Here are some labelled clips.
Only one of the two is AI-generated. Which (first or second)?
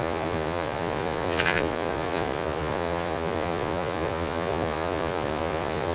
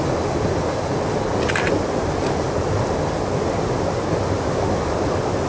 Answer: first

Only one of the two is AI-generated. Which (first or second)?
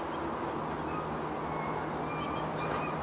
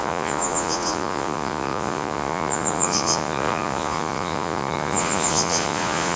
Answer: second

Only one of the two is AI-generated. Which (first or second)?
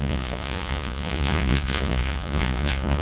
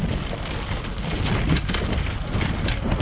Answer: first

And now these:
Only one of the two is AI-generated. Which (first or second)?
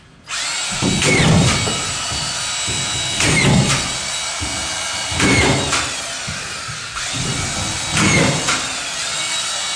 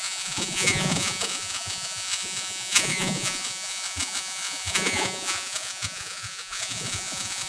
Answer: second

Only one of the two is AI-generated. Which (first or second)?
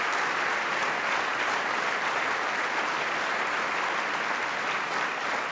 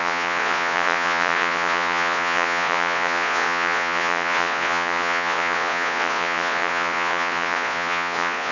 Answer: second